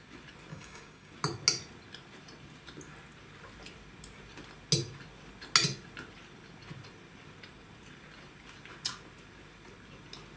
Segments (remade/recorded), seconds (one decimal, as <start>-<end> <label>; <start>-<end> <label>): 0.0-0.5 recorded; 0.5-1.1 remade; 1.1-10.4 recorded